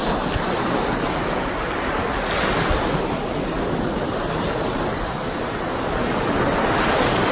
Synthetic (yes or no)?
no